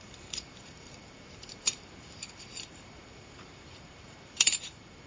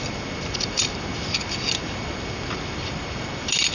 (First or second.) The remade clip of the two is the first